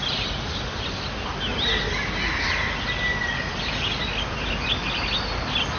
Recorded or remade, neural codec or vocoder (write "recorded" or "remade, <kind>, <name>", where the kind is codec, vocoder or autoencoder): recorded